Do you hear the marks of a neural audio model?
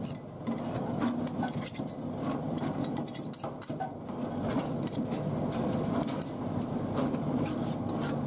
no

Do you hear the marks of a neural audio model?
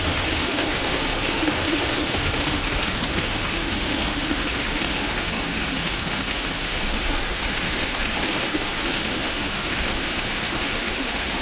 yes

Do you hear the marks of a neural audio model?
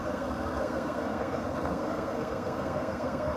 yes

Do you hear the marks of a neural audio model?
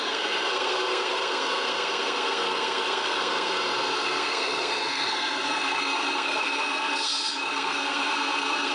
yes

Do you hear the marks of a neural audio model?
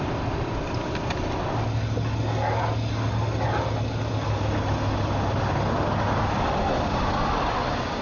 no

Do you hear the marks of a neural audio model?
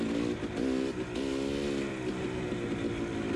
no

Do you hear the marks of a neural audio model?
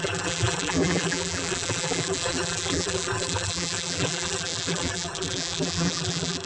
yes